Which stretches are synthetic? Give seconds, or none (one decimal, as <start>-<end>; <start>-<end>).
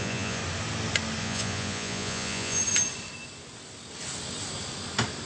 0.0-0.4; 1.2-2.6